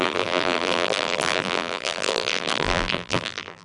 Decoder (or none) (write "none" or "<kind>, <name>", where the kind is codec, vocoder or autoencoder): vocoder, BigVGAN v2